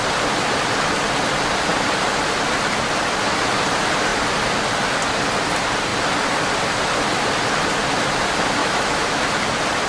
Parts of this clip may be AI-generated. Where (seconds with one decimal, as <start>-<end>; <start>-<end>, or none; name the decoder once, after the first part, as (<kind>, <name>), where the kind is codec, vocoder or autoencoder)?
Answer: 8.6-9.2 (autoencoder, DAC-VAE)